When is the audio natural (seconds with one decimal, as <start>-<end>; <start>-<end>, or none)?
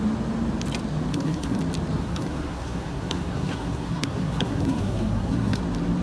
0.0-1.1; 1.6-2.0; 5.6-6.0